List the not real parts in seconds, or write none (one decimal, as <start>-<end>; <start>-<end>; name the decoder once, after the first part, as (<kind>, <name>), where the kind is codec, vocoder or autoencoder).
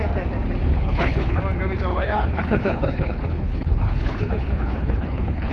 0.7-1.4 (codec, HILCodec); 1.9-5.5